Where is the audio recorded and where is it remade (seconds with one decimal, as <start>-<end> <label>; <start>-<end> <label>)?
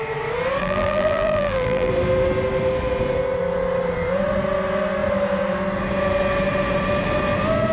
0.0-0.6 recorded; 0.6-1.9 remade; 1.9-7.7 recorded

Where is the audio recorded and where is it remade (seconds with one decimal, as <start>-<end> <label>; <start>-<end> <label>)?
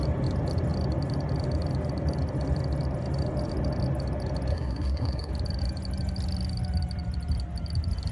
0.0-4.5 recorded; 4.5-5.3 remade; 5.3-8.1 recorded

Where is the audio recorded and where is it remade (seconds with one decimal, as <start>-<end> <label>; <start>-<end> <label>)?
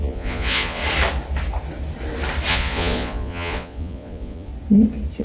0.0-0.8 remade; 0.8-2.5 recorded; 2.5-4.5 remade; 4.5-5.2 recorded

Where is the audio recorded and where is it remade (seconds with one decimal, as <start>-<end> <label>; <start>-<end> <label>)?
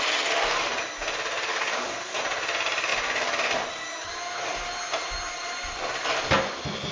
0.0-1.5 recorded; 1.5-2.2 remade; 2.2-6.9 recorded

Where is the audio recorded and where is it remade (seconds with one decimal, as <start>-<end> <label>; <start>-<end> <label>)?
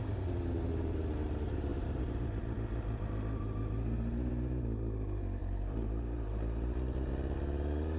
0.0-1.7 recorded; 1.7-4.3 remade; 4.3-5.4 recorded; 5.4-7.1 remade; 7.1-8.0 recorded